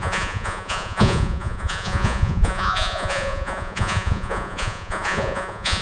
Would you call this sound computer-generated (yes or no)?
yes